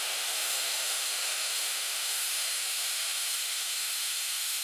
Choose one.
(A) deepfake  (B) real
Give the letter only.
A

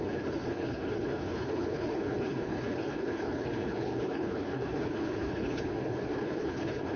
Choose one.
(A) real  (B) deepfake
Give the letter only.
B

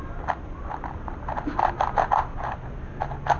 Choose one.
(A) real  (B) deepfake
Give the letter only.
A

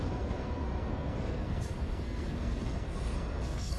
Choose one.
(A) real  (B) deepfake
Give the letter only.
B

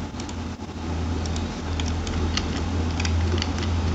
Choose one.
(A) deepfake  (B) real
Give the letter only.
B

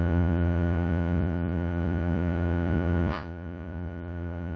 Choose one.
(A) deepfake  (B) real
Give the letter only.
A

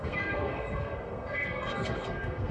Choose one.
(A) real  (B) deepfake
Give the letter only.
B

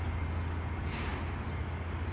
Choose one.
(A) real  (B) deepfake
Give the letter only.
A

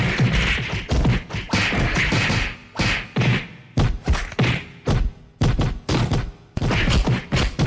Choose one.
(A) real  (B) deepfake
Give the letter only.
A